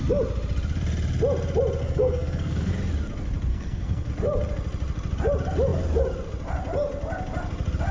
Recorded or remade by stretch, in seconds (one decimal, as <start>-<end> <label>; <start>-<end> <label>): 0.0-1.8 recorded; 1.8-2.7 remade; 2.7-3.5 recorded; 3.5-4.1 remade; 4.1-7.9 recorded